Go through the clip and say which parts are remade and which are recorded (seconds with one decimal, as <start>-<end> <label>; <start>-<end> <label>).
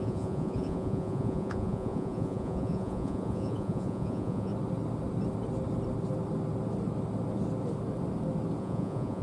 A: 0.0-4.5 remade; 4.5-8.6 recorded; 8.6-9.2 remade